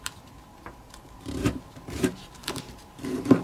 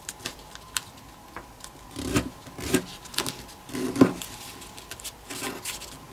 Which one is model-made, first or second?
first